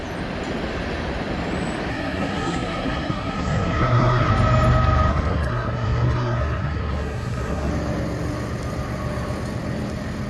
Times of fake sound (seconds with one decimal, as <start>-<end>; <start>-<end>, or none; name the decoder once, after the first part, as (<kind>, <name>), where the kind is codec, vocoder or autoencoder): 1.9-4.3 (codec, SNAC); 5.1-7.7